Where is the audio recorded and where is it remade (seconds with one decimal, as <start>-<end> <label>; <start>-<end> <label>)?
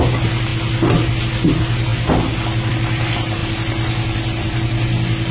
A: 0.0-5.3 recorded